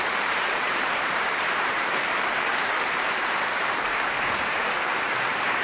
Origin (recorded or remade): remade